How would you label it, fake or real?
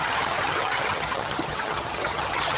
fake